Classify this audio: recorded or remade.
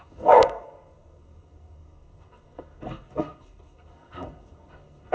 remade